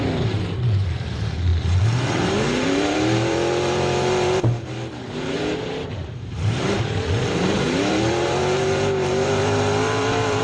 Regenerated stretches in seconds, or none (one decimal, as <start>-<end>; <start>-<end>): 0.0-10.4